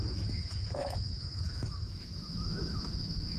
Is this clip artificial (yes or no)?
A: yes